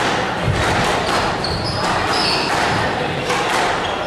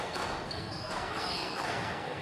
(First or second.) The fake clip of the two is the second